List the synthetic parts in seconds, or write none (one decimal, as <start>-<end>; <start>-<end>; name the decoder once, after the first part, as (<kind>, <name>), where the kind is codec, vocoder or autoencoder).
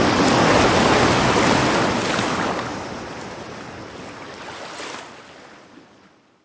none